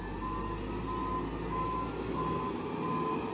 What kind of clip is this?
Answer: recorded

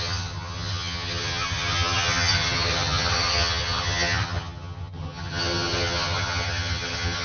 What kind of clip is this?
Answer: remade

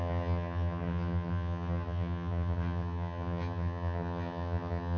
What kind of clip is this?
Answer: remade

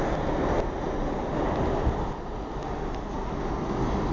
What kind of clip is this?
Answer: recorded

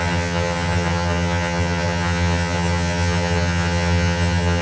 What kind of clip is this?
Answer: remade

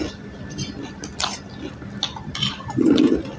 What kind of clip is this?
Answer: recorded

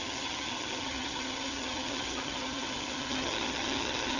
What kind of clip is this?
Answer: remade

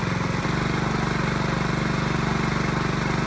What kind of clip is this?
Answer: recorded